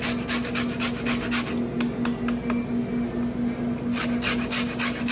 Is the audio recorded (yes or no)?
yes